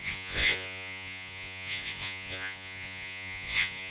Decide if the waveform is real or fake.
fake